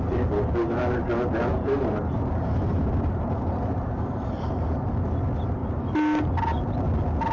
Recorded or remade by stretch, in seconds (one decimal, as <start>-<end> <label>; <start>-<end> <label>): 0.0-1.5 recorded; 1.5-4.3 remade; 4.3-7.3 recorded